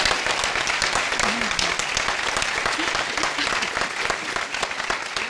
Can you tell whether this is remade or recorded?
recorded